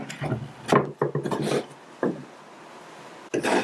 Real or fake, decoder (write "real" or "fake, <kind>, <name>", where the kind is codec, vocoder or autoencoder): real